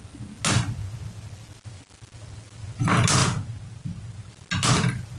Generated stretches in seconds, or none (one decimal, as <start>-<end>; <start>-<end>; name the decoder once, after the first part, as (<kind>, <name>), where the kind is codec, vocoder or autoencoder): none